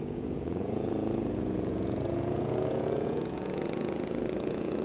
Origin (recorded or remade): remade